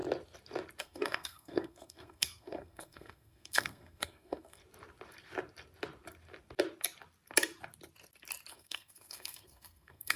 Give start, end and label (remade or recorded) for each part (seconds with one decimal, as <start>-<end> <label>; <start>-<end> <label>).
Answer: 0.0-0.8 recorded; 0.8-4.6 remade; 4.6-8.5 recorded; 8.5-10.2 remade